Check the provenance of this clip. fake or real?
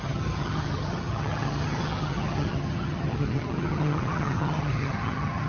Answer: fake